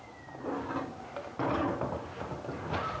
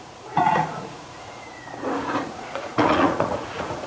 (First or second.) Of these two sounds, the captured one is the first